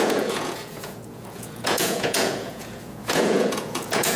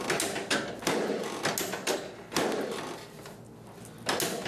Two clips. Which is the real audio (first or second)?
second